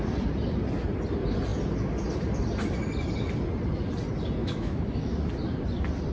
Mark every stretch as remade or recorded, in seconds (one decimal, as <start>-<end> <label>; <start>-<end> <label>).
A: 0.0-4.4 recorded; 4.4-5.1 remade; 5.1-6.1 recorded